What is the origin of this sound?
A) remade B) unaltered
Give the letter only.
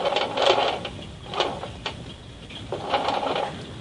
B